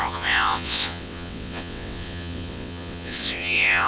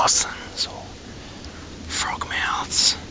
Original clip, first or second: second